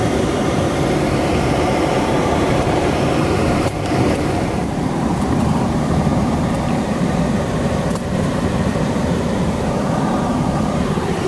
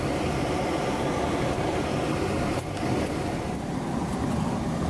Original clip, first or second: second